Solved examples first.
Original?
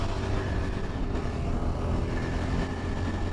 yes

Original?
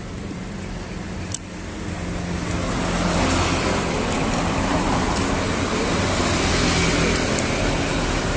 yes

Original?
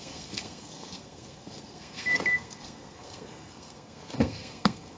no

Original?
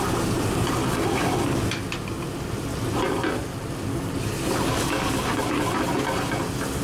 yes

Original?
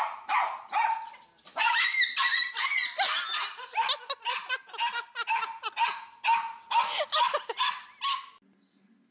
yes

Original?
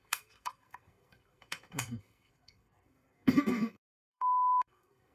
no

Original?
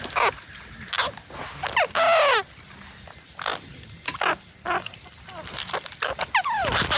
yes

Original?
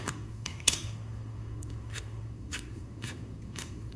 no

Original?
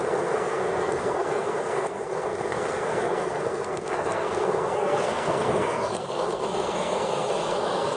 no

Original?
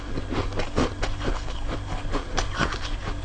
yes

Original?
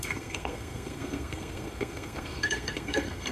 no